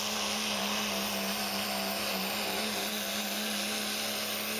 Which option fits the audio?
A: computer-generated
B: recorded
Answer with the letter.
B